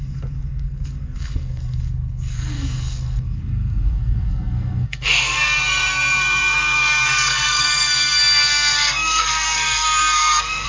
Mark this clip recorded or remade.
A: remade